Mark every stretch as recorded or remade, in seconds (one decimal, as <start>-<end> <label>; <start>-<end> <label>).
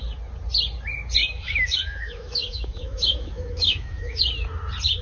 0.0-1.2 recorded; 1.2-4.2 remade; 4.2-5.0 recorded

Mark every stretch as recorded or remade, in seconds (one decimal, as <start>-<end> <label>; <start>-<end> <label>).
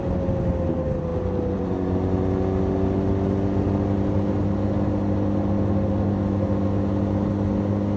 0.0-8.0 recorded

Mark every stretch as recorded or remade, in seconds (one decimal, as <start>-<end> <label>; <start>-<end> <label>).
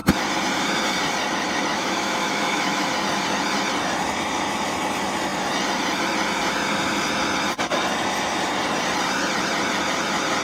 0.0-1.7 recorded; 1.7-2.9 remade; 2.9-10.4 recorded